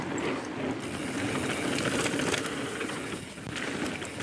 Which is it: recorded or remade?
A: recorded